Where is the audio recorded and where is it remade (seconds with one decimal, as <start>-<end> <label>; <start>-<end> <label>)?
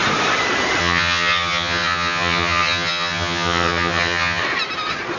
0.0-0.8 recorded; 0.8-4.4 remade; 4.4-5.2 recorded